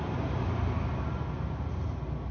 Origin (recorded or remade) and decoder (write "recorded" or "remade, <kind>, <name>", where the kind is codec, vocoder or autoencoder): recorded